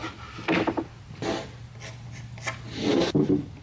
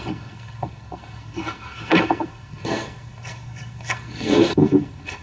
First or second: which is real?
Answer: first